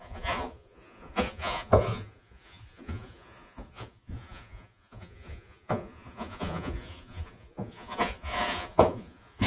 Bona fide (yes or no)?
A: no